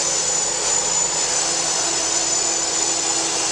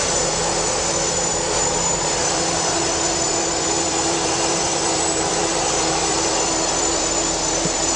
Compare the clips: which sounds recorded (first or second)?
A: first